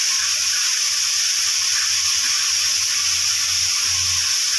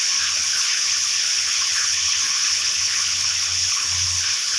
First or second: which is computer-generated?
second